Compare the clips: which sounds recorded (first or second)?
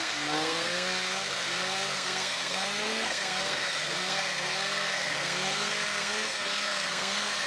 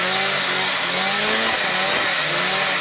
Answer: second